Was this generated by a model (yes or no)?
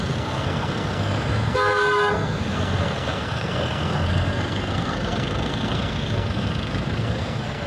yes